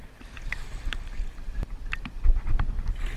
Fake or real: real